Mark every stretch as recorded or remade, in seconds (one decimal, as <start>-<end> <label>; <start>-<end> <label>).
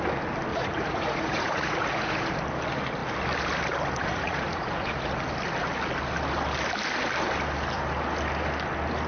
0.0-0.5 recorded; 0.5-2.4 remade; 2.4-4.0 recorded; 4.0-5.1 remade; 5.1-9.1 recorded